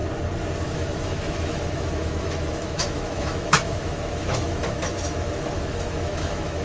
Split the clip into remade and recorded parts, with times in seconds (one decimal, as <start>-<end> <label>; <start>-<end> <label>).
0.0-0.6 recorded; 0.6-6.6 remade